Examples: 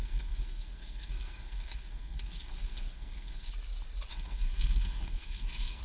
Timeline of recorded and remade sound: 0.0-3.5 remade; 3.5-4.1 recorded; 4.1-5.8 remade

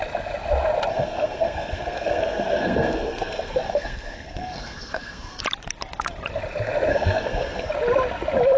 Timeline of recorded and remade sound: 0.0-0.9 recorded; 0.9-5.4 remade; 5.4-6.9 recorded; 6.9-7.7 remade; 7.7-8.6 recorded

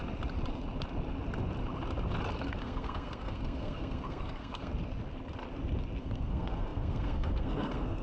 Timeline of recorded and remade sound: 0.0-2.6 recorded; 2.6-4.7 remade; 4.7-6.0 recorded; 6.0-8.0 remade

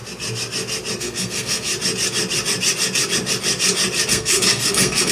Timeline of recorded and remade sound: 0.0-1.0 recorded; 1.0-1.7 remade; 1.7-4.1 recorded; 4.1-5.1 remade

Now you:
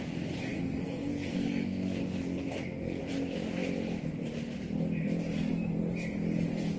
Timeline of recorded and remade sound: 0.0-0.5 recorded; 0.5-3.0 remade; 3.0-6.8 recorded